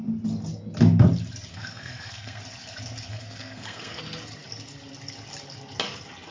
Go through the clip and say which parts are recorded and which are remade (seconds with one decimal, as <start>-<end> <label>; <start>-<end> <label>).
0.0-1.5 recorded; 1.5-2.4 remade; 2.4-3.1 recorded; 3.1-4.0 remade; 4.0-6.3 recorded